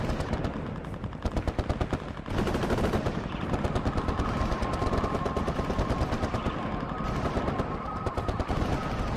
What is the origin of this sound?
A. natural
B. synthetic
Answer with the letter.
A